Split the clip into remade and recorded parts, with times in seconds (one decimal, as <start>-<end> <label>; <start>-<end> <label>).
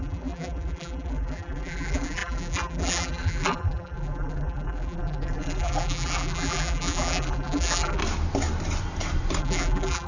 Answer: 0.0-8.0 remade; 8.0-9.4 recorded; 9.4-10.1 remade